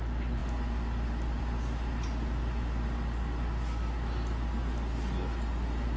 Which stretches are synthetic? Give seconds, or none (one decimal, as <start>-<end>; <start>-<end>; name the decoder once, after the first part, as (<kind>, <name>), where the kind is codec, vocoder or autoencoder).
none